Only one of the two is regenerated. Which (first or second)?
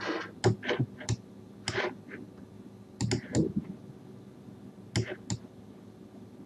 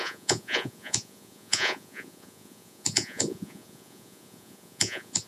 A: second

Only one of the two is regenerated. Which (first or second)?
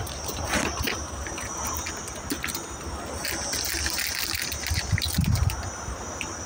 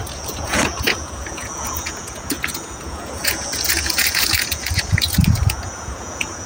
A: second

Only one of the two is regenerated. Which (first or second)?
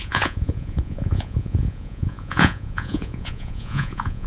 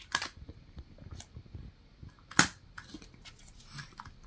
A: first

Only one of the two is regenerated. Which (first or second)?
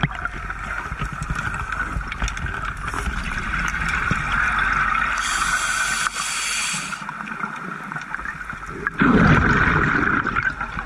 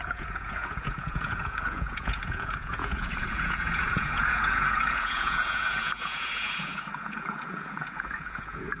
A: second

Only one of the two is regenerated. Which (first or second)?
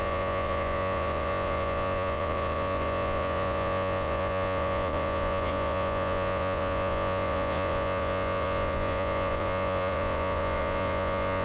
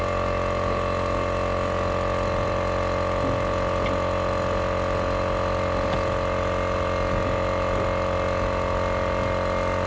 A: first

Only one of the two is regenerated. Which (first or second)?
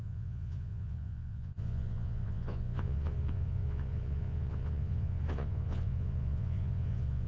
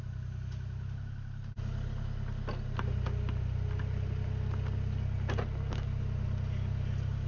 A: first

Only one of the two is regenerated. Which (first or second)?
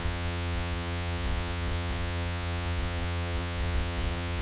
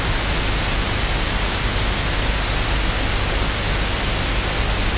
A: first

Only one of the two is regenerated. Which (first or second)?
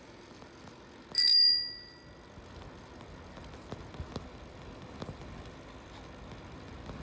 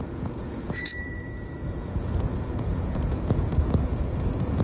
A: second